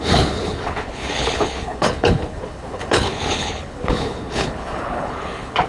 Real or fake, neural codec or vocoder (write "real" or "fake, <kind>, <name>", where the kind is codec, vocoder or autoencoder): fake, codec, HILCodec